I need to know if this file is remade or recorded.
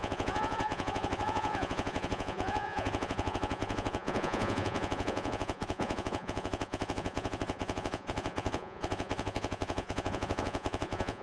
remade